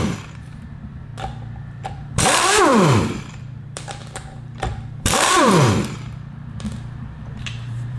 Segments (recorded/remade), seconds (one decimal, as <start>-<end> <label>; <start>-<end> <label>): 0.0-1.1 remade; 1.1-1.7 recorded; 1.7-8.0 remade